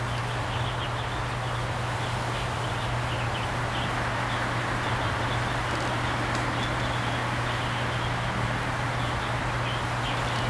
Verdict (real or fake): real